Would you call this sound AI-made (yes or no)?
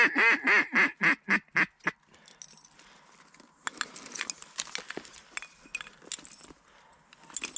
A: no